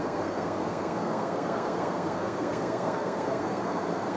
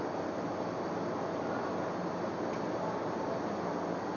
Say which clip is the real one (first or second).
second